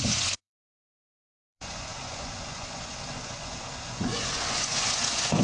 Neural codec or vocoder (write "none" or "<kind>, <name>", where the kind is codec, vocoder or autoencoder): vocoder, Vocos